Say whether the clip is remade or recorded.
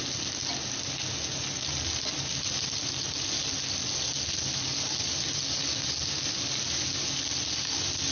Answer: recorded